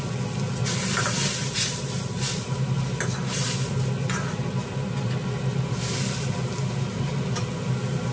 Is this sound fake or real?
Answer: real